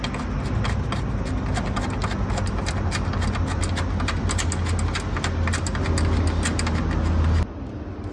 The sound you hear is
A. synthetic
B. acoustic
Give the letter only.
B